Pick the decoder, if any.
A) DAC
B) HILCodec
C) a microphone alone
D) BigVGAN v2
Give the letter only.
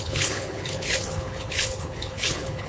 B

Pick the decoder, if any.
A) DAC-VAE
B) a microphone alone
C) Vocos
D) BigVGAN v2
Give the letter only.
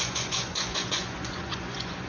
C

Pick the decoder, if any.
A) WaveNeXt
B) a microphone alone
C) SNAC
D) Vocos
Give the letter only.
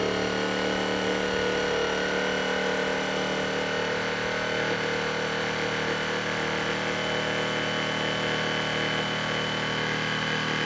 B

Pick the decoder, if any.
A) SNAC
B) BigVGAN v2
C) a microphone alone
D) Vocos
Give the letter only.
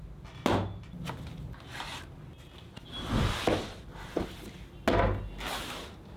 C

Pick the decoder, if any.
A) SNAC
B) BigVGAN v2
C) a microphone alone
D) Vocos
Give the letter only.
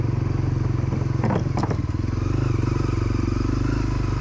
C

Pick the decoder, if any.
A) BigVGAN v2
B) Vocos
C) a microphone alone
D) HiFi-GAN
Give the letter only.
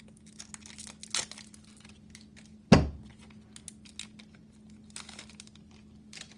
C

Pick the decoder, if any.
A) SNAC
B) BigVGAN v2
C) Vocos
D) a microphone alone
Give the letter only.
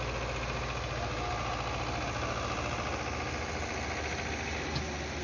D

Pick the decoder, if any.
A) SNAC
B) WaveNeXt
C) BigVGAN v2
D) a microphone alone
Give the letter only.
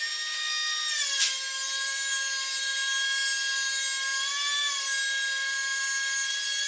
D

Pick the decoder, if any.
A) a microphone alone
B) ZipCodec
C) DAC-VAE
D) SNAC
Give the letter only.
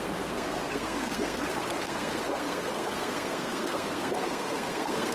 D